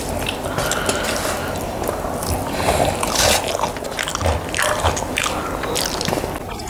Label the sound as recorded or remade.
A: recorded